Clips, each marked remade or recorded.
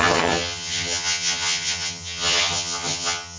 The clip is remade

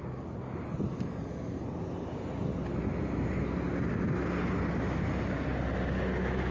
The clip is recorded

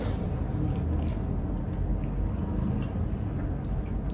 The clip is recorded